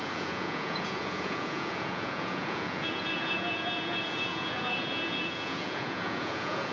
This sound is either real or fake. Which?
fake